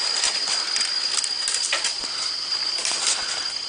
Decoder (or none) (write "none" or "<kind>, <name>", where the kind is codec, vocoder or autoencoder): none